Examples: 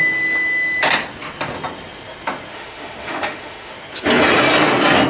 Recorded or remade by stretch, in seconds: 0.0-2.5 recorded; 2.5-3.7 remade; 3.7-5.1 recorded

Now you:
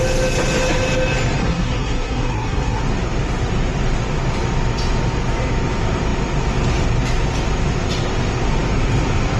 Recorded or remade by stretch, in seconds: 0.0-1.4 recorded; 1.4-2.8 remade; 2.8-9.4 recorded

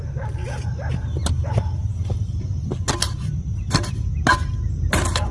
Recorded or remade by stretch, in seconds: 0.0-1.9 recorded; 1.9-2.7 remade; 2.7-3.5 recorded; 3.5-4.1 remade; 4.1-5.3 recorded

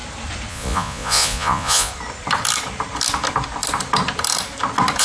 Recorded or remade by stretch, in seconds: 0.0-0.5 recorded; 0.5-1.9 remade; 1.9-5.0 recorded

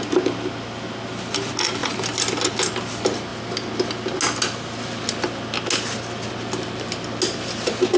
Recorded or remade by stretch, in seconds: 0.0-8.0 recorded